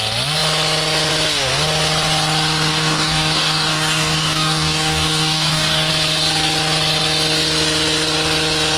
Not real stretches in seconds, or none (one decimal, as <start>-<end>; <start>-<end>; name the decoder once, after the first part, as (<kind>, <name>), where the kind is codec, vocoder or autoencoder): 2.7-5.9 (codec, DAC)